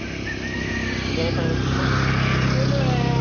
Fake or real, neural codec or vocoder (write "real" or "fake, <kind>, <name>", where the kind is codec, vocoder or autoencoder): real